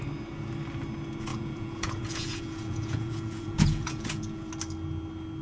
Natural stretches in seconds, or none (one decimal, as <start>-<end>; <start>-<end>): 0.0-1.3; 4.5-5.4